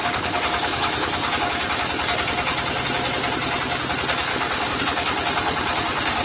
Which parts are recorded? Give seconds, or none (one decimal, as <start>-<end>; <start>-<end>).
1.4-4.3; 4.8-6.2